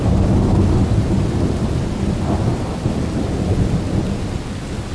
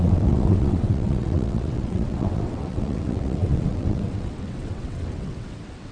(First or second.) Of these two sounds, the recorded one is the first